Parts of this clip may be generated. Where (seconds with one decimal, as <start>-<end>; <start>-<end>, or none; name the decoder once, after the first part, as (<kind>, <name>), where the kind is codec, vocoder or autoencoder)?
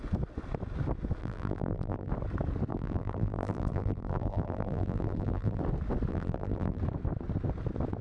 1.2-2.1 (vocoder, BigVGAN v2); 2.7-5.6; 6.1-6.8